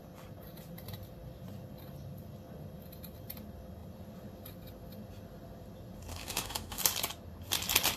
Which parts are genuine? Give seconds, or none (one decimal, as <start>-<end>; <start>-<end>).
0.0-6.1; 6.8-8.0